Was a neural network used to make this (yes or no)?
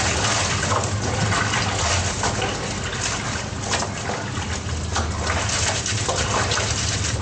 no